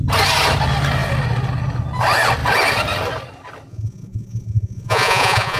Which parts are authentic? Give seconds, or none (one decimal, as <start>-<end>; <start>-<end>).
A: 0.0-3.7